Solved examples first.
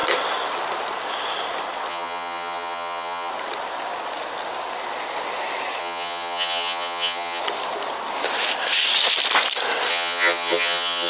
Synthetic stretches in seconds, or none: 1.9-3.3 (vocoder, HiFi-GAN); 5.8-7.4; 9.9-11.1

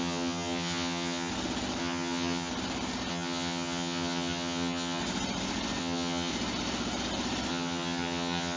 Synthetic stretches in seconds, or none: 0.0-1.3 (vocoder, HiFi-GAN); 1.8-2.5; 3.1-5.0; 5.8-6.3; 7.5-8.6

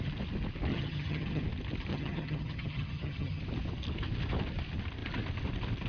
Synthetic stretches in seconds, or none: 0.7-1.4 (vocoder, HiFi-GAN); 1.9-3.4

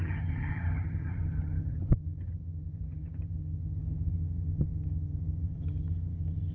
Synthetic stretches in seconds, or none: 0.0-6.5 (vocoder, HiFi-GAN)

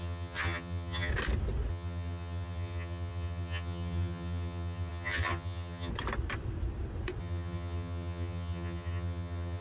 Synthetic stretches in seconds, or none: 0.0-1.1 (vocoder, HiFi-GAN); 1.7-5.9; 7.2-9.6

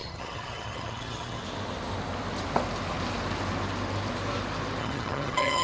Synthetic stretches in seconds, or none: 0.0-1.4 (vocoder, HiFi-GAN); 4.8-5.6